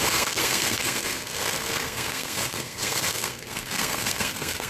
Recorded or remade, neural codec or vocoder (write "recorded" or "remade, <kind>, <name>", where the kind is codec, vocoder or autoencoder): remade, codec, SNAC